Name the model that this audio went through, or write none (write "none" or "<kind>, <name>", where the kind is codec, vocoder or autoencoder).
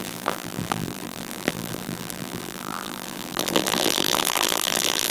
vocoder, BigVGAN v2